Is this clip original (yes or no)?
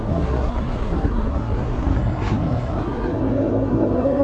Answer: no